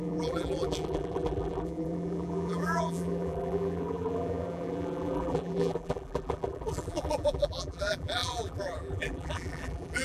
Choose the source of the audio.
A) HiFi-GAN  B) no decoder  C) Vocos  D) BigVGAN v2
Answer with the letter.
D